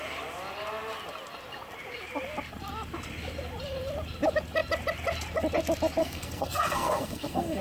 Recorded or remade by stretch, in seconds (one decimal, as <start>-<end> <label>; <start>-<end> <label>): 0.0-6.0 recorded; 6.0-7.6 remade